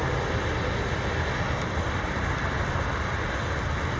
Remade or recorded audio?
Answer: recorded